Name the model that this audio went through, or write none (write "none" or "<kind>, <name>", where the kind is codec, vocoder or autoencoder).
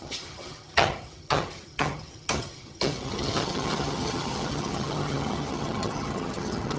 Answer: vocoder, HiFi-GAN